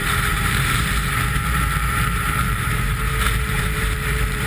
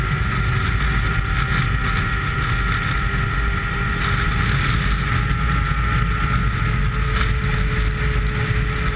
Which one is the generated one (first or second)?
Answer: first